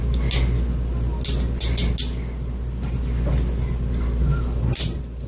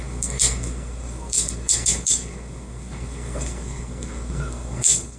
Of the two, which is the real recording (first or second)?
first